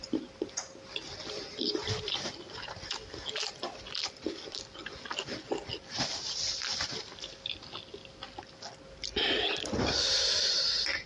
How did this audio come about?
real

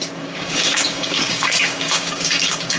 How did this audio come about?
fake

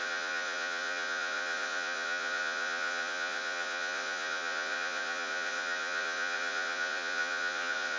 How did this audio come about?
fake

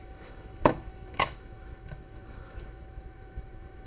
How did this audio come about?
fake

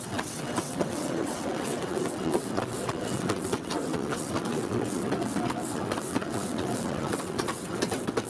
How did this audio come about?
fake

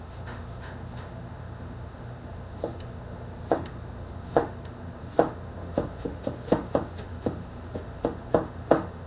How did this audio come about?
fake